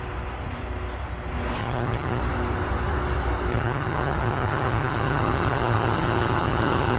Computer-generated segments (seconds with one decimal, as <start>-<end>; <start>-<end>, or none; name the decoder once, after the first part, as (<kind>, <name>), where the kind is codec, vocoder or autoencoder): 1.6-2.2 (vocoder, HiFi-GAN); 3.5-7.0